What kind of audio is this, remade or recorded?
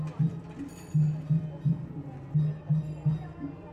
recorded